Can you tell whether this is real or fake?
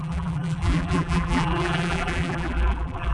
fake